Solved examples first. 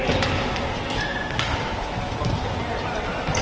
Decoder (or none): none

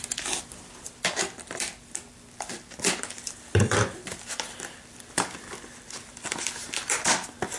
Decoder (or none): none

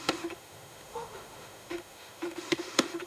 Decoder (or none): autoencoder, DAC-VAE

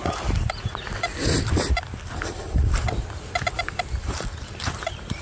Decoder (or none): vocoder, BigVGAN v2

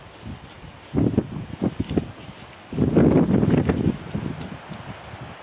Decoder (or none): none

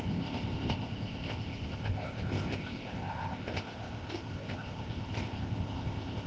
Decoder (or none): codec, ZipCodec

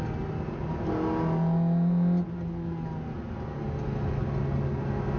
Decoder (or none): none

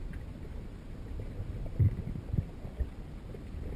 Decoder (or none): none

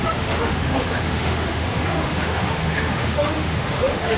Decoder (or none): autoencoder, DAC-VAE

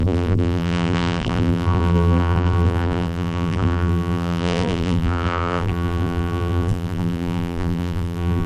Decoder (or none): vocoder, BigVGAN v2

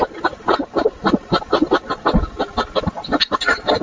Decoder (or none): none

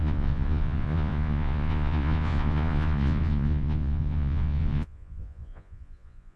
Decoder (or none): vocoder, Vocos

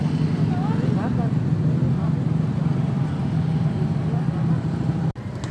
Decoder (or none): none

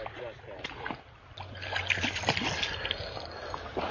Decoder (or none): none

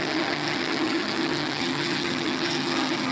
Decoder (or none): vocoder, HiFi-GAN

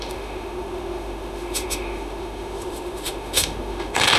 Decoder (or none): autoencoder, DAC-VAE